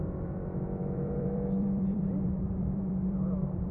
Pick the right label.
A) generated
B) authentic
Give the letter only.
A